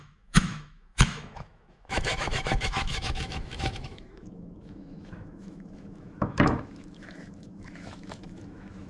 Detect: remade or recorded remade